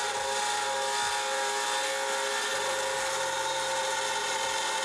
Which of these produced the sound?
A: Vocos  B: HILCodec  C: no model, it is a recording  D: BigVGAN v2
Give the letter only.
C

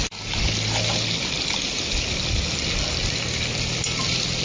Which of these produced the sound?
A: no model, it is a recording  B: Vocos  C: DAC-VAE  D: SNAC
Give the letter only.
A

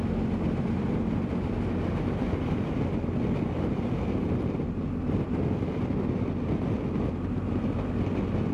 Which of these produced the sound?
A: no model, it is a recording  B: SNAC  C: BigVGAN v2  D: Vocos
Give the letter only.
A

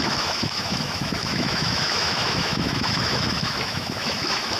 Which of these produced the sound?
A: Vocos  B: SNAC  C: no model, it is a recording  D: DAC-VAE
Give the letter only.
D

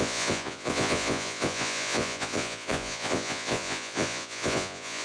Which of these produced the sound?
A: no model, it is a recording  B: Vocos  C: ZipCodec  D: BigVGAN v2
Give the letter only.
B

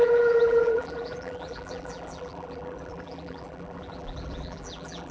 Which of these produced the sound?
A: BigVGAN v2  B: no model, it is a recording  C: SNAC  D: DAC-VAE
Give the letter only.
A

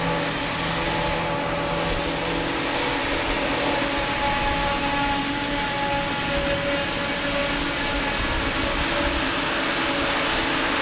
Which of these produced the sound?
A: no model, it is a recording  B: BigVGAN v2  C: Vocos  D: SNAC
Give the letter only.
A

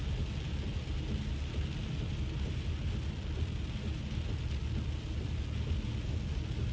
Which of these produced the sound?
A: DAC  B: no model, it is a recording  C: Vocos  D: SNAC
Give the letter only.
B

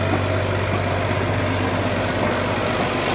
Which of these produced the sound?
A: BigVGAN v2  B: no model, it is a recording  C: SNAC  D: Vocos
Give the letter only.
B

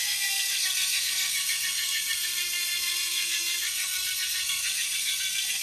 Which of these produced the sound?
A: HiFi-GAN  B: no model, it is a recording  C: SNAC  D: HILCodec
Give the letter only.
C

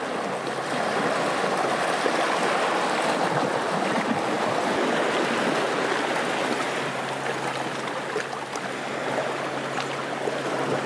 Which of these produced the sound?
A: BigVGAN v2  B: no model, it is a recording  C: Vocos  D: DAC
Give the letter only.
B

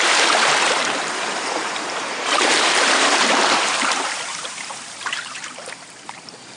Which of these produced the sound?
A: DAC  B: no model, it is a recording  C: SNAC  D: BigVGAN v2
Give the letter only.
D